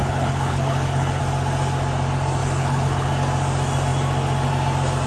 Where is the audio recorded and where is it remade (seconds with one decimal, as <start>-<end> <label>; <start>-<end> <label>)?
0.0-1.2 remade; 1.2-2.4 recorded; 2.4-3.1 remade; 3.1-5.1 recorded